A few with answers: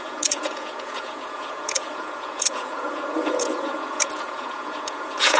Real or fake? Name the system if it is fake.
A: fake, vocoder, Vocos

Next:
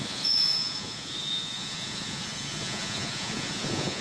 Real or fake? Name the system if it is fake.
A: fake, vocoder, Vocos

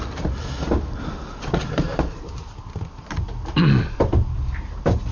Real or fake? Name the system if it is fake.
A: real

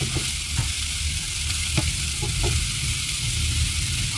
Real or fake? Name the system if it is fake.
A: real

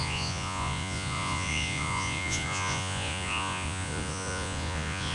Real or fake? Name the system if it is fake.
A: fake, vocoder, Vocos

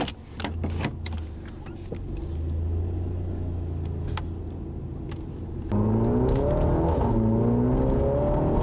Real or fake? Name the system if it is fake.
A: real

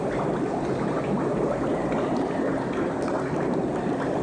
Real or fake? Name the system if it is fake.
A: real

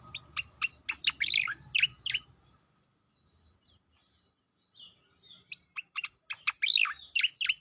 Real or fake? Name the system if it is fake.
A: real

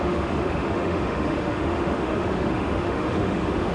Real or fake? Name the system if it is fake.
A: fake, autoencoder, DAC-VAE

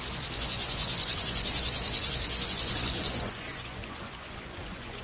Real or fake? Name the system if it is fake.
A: fake, vocoder, Vocos